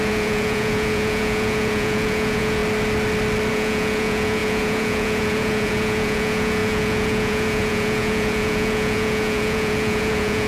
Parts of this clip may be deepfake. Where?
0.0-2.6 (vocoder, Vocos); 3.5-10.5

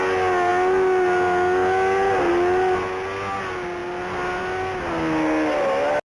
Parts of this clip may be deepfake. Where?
none

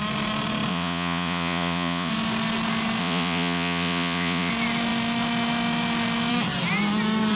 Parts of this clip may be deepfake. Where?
0.7-2.1 (vocoder, Vocos); 3.0-4.5

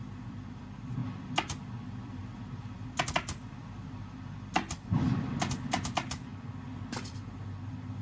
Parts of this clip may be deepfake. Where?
0.0-2.2 (vocoder, BigVGAN v2); 2.7-6.3; 6.9-8.0

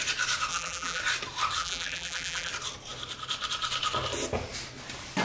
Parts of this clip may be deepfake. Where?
0.5-1.0 (vocoder, BigVGAN v2); 1.6-2.5